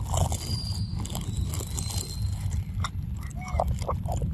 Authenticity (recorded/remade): recorded